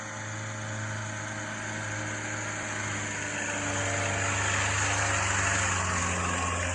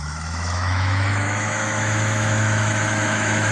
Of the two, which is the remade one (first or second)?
second